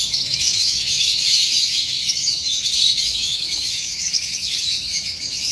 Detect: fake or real fake